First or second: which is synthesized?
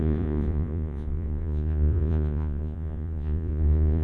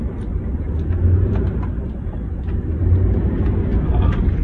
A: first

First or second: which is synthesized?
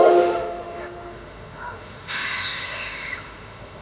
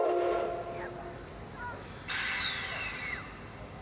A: first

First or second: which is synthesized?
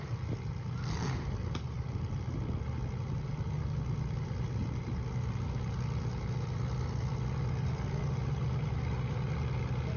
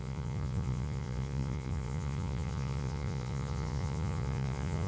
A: second